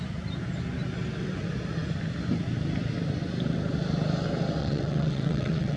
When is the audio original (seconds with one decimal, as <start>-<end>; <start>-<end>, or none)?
0.0-4.6